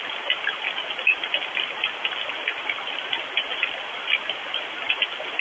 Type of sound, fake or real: real